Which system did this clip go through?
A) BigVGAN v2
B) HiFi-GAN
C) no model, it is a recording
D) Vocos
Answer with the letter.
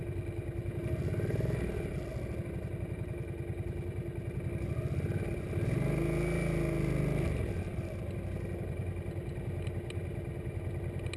C